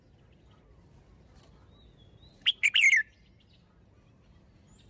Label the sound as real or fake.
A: real